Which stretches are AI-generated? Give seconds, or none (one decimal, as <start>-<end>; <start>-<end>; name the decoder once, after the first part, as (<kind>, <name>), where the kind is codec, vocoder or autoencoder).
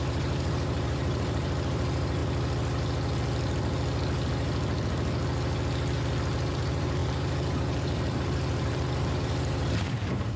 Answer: 0.0-2.2 (vocoder, BigVGAN v2); 6.5-10.4